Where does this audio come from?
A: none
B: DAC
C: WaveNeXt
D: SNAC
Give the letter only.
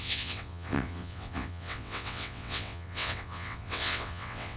C